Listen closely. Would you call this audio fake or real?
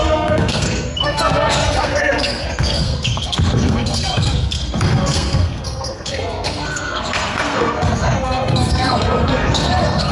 fake